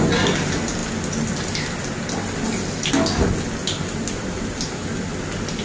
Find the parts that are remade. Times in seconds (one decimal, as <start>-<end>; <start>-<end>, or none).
3.6-4.9